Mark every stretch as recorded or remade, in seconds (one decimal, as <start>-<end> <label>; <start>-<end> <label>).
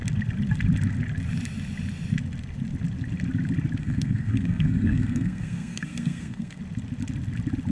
0.0-3.8 recorded; 3.8-6.6 remade; 6.6-7.7 recorded